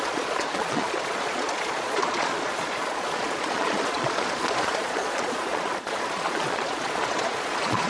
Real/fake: fake